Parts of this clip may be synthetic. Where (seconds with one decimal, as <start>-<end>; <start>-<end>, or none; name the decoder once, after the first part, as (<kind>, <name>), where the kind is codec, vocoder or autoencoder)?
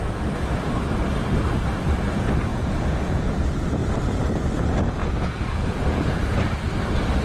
2.5-3.4 (vocoder, Vocos); 5.0-6.2